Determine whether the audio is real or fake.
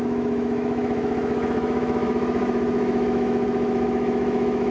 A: fake